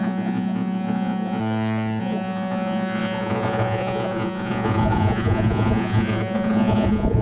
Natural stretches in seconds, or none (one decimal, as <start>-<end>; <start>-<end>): 1.4-2.0